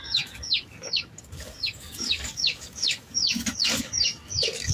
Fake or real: fake